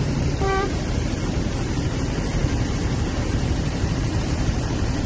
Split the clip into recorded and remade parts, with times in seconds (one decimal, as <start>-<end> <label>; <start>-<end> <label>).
0.0-5.1 remade